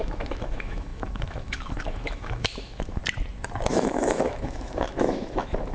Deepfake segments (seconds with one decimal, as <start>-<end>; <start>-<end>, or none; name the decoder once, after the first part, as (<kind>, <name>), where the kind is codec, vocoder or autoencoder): 0.0-3.0 (autoencoder, DAC-VAE); 3.7-5.7